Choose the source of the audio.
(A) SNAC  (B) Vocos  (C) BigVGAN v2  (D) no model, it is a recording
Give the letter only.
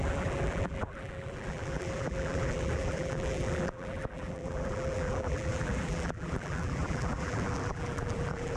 C